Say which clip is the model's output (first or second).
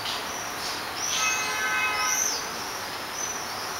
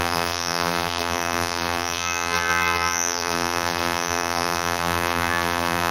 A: second